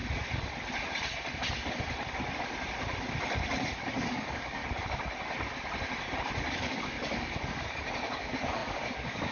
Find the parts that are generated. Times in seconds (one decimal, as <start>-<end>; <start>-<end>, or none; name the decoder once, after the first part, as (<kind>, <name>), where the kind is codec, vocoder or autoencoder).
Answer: 3.8-4.6 (codec, DAC); 6.5-9.3